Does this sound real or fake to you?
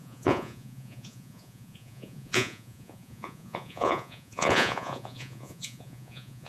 fake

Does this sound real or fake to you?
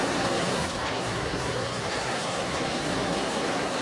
fake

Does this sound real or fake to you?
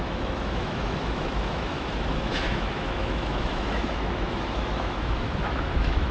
fake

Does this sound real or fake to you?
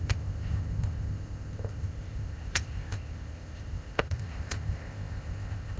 fake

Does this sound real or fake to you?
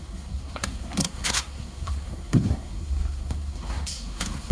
fake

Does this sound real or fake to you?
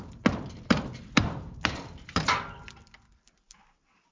fake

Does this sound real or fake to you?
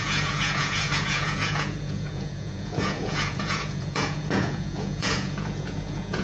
fake